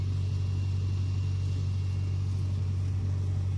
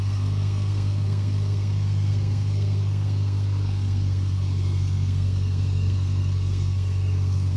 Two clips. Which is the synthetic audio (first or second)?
second